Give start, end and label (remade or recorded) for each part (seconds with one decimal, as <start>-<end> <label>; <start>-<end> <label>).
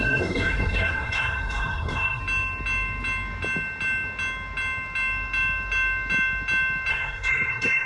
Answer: 0.0-2.2 remade; 2.2-6.9 recorded; 6.9-7.9 remade